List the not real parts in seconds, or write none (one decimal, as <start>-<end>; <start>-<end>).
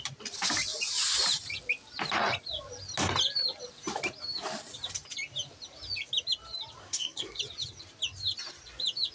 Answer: 6.8-7.4